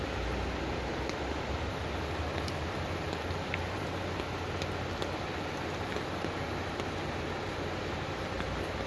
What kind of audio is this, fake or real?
real